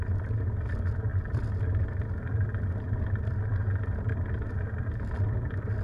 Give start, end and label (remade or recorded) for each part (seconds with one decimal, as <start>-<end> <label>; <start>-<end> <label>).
0.0-5.8 recorded